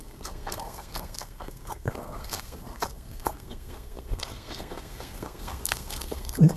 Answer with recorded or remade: remade